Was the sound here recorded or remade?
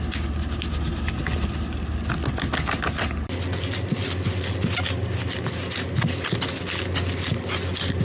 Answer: recorded